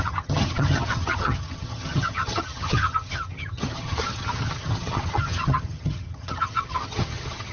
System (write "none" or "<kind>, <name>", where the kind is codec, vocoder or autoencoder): vocoder, HiFi-GAN